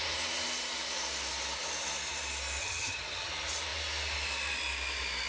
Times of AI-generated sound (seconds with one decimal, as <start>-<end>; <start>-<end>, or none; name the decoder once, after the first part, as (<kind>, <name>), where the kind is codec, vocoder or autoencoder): 2.6-3.3 (vocoder, HiFi-GAN)

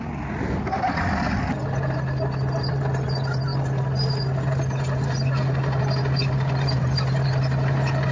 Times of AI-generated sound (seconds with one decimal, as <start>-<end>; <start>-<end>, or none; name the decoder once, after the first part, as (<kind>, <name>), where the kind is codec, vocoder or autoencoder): none